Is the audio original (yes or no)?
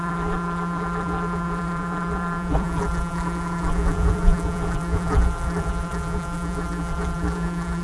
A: no